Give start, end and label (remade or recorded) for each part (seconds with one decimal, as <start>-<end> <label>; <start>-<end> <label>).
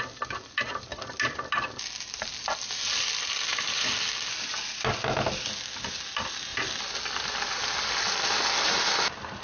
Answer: 0.0-9.4 recorded